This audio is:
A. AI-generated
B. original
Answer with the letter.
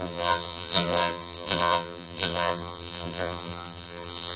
A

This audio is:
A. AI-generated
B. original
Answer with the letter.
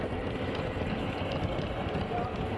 B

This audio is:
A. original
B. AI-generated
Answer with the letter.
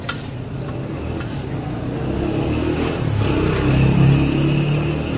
A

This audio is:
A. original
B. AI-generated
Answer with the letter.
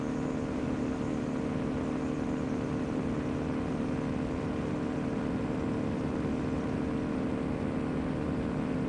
A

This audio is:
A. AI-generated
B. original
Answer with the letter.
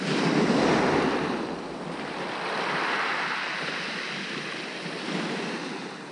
A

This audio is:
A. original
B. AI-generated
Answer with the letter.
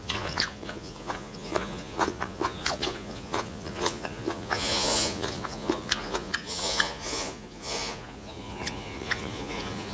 B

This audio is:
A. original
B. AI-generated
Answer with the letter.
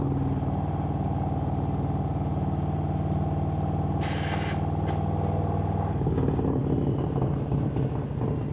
A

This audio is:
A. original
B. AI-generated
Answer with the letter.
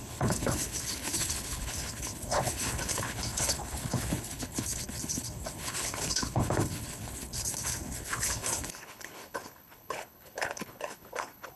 B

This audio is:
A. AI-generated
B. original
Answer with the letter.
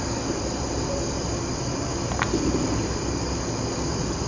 B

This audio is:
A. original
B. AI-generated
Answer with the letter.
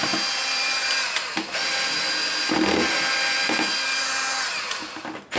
A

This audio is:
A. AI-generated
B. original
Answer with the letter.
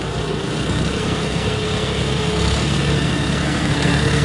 A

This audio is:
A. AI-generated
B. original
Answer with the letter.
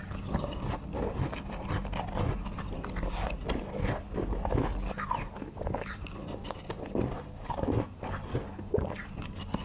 B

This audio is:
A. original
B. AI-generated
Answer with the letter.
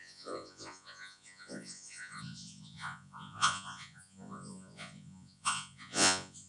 B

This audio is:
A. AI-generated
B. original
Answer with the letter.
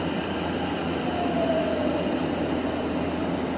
B